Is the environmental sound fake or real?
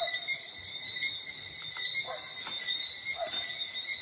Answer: real